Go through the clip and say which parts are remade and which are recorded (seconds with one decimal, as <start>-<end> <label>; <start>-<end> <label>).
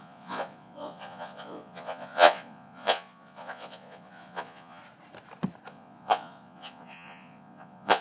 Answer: 0.0-4.8 remade; 4.8-5.7 recorded; 5.7-8.0 remade